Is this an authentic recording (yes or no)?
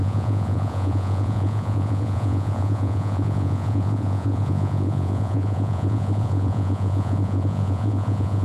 no